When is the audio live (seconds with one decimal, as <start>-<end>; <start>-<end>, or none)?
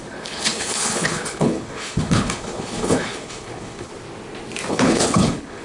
3.9-4.7